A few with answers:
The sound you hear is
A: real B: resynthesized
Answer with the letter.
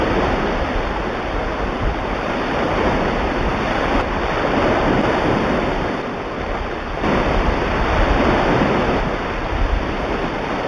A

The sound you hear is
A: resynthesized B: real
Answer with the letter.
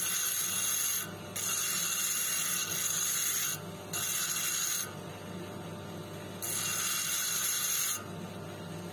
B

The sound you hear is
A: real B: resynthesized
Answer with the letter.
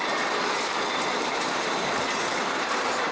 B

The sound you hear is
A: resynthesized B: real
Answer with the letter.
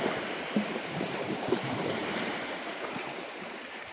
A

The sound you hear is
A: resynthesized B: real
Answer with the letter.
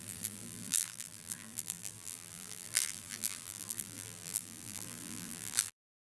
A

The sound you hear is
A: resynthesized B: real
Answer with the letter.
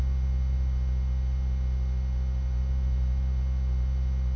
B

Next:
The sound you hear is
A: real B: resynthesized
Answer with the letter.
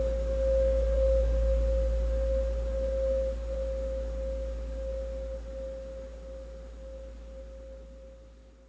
A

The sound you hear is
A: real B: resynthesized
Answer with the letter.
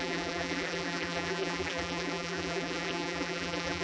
B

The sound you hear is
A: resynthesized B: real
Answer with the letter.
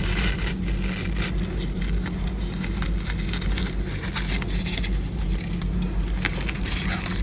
B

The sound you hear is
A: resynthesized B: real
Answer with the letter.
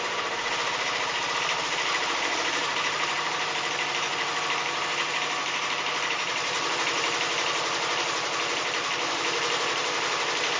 A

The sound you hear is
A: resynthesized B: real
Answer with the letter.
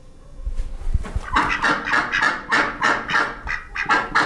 B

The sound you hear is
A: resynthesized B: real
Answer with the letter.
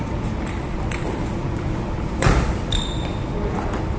B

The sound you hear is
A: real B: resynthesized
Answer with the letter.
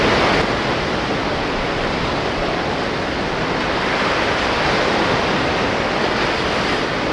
A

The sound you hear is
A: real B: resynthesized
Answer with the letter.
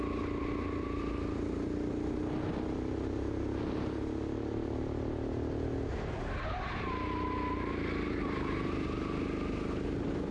A